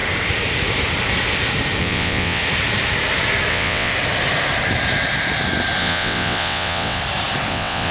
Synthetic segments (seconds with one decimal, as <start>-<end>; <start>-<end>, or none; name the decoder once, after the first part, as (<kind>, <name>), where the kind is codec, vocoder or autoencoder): 1.8-2.4 (vocoder, WaveNeXt); 3.5-3.9; 5.8-7.0; 7.5-7.9